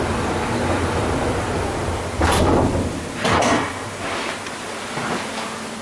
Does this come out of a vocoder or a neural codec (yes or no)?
no